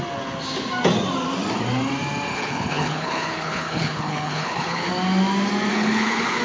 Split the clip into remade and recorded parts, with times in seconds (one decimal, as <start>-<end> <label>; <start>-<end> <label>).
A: 0.0-2.3 recorded; 2.3-4.9 remade; 4.9-5.7 recorded; 5.7-6.4 remade